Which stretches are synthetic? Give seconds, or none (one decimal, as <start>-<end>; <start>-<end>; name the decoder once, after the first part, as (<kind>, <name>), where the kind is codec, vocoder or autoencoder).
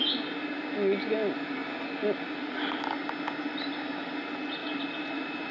4.6-5.5 (vocoder, Vocos)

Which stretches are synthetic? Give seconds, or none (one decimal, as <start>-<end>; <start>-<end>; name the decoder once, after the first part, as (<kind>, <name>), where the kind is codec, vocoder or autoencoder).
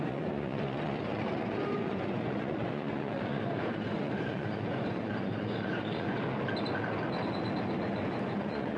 0.0-6.2 (vocoder, Vocos); 8.3-8.8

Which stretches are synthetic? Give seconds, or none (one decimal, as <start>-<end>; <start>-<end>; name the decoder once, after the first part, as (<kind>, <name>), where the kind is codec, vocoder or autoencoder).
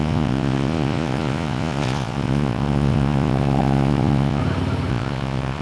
0.0-4.4 (vocoder, Vocos); 4.9-5.6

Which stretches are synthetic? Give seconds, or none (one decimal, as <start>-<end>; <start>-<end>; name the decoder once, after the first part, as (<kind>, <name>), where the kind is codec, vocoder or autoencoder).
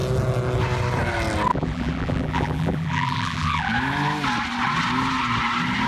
1.5-3.7 (vocoder, BigVGAN v2)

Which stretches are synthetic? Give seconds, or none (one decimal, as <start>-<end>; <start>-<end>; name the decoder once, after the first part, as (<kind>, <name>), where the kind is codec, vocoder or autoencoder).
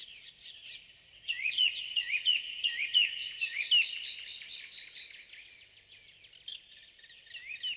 0.0-3.7 (vocoder, Vocos)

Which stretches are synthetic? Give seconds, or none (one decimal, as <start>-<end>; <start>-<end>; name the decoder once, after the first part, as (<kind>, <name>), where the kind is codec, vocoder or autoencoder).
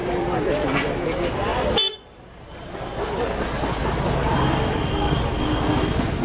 0.0-0.8 (vocoder, BigVGAN v2)